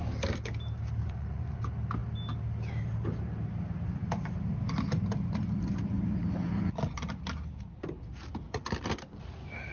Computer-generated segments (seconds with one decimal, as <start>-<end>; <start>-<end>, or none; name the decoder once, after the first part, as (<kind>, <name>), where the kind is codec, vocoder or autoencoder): 1.0-1.6 (vocoder, Vocos)